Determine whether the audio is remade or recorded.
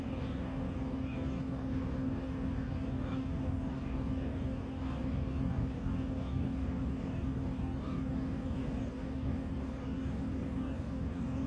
remade